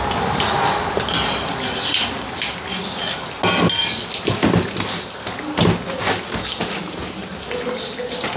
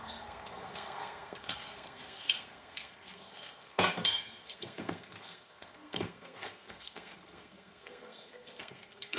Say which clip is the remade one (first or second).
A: second